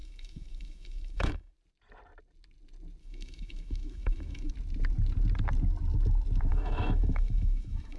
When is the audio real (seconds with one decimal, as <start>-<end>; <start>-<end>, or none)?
1.5-3.0; 4.5-6.5